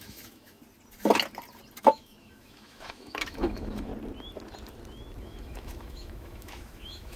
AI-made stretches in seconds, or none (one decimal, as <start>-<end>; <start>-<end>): 0.0-0.6; 1.8-3.9; 5.2-7.2